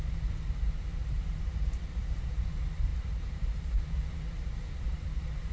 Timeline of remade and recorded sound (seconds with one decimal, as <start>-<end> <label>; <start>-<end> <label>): 0.0-0.9 remade; 0.9-1.4 recorded; 1.4-5.5 remade